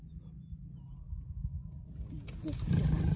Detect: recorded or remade recorded